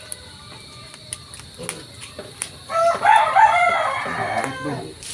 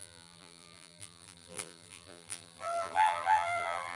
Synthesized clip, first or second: second